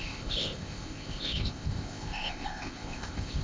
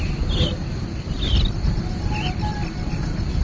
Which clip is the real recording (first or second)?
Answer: second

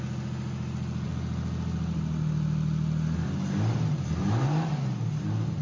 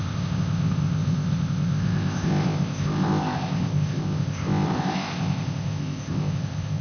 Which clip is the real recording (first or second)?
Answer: first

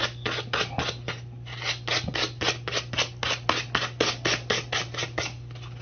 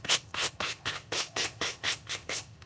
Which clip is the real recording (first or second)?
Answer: first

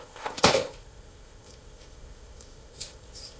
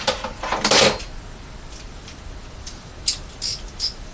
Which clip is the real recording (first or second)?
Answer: second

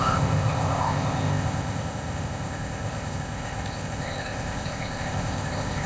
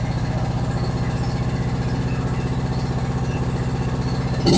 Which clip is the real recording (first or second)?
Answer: second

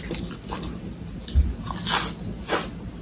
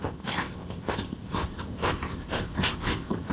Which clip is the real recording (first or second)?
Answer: first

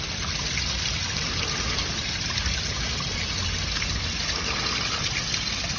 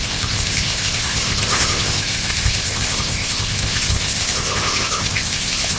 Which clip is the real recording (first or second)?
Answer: first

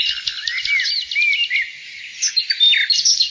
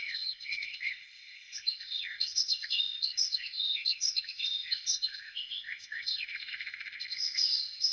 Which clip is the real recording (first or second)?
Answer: first